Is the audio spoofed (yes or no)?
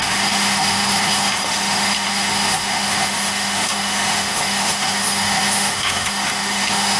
yes